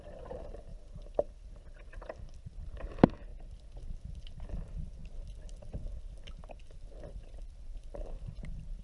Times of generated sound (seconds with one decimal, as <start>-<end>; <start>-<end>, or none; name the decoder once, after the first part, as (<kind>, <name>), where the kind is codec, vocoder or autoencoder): none